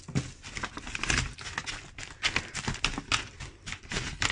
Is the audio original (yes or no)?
yes